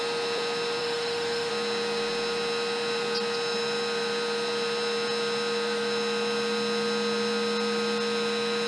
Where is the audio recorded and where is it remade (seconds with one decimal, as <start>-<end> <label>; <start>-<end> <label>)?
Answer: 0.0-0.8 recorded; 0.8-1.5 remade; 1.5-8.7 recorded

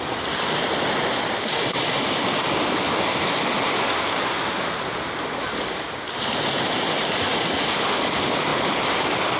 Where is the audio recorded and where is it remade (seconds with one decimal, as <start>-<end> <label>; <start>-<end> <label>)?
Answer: 0.0-7.3 recorded; 7.3-7.9 remade; 7.9-8.5 recorded; 8.5-9.4 remade

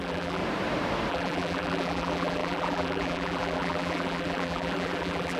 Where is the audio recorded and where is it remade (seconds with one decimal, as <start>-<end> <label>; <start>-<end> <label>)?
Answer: 0.0-0.4 remade; 0.4-1.1 recorded; 1.1-5.4 remade

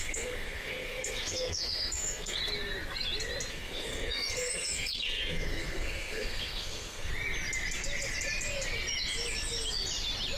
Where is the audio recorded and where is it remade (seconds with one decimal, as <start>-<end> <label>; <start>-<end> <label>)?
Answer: 0.0-2.4 remade; 2.4-3.5 recorded; 3.5-7.1 remade; 7.1-10.4 recorded